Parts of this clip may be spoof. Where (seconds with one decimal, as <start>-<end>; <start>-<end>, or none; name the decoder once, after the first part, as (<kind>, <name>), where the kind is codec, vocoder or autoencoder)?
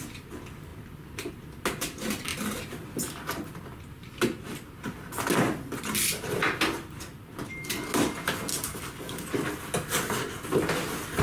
8.5-9.3 (codec, DAC)